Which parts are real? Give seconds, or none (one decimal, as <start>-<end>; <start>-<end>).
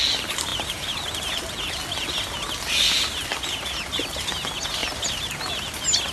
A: 0.0-4.8; 5.5-6.1